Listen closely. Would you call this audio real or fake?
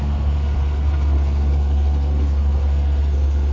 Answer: fake